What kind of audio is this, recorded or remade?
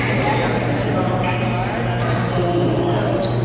recorded